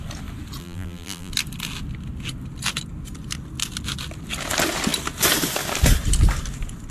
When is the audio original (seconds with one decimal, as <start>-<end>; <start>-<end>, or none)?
0.0-0.6; 1.3-6.9